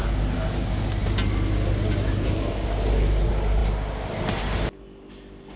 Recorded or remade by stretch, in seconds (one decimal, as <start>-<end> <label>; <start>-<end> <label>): 0.0-5.6 recorded